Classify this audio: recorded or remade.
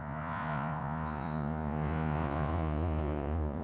remade